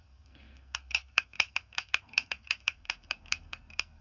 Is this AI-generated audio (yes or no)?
yes